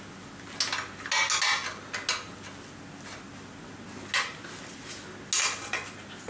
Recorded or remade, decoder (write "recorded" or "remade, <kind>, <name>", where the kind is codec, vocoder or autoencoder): recorded